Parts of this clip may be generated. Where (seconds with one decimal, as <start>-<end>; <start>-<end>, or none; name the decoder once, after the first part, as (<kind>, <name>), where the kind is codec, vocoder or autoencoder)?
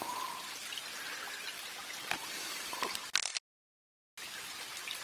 none